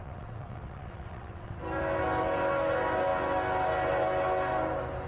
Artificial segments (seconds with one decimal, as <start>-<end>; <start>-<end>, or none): 0.0-1.5